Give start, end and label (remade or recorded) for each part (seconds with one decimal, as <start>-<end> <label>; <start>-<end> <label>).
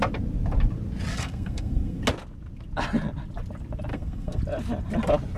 0.0-1.1 recorded; 1.1-2.0 remade; 2.0-3.9 recorded; 3.9-4.4 remade; 4.4-5.4 recorded